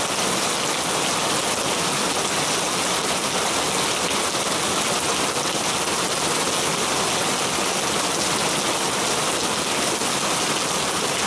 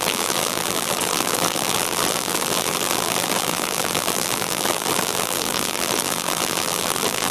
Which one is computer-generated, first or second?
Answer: second